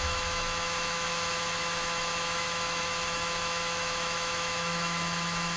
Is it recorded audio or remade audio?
remade